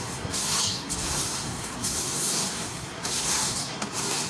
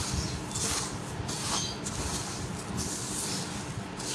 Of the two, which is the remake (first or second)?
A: first